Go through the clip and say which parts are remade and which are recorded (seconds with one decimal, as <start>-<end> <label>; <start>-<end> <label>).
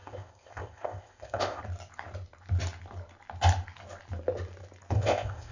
0.0-1.6 remade; 1.6-4.9 recorded; 4.9-5.5 remade